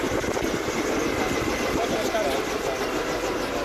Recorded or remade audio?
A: recorded